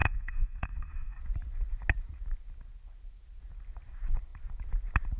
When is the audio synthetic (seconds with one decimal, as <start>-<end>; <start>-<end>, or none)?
0.0-1.2